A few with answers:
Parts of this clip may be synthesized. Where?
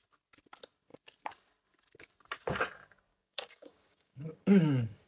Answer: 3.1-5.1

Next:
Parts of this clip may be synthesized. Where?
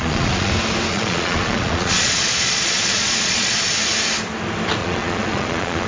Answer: 0.0-0.5; 0.9-3.7; 4.8-5.9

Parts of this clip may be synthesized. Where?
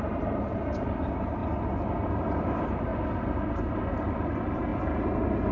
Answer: 0.0-1.4; 2.3-2.9; 3.5-4.7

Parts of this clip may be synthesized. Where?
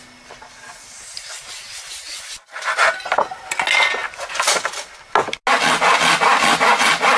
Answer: none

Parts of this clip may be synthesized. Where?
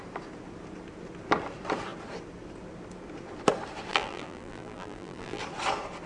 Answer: 3.9-5.4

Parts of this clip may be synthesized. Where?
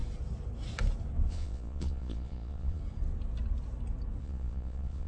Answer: 1.3-2.8; 4.2-5.1